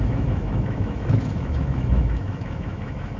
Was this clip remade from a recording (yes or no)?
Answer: yes